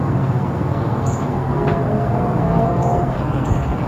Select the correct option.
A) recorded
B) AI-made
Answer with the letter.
B